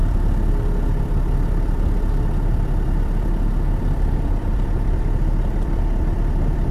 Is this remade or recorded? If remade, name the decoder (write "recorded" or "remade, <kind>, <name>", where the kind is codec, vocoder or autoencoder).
remade, vocoder, BigVGAN v2